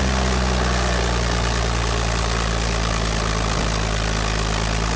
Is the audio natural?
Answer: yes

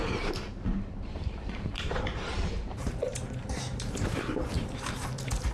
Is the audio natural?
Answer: no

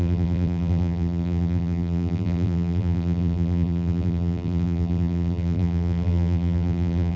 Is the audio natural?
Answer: no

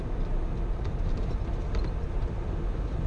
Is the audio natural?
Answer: yes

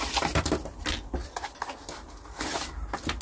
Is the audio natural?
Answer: yes